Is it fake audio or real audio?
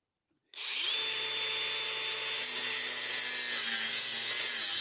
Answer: real